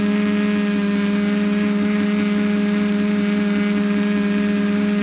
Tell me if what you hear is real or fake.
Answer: real